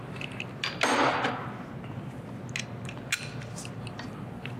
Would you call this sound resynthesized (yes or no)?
no